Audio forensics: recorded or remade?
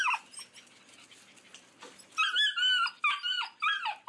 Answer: recorded